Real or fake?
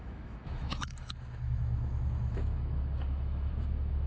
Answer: fake